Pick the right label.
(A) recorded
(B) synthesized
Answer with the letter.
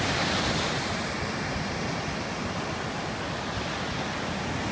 A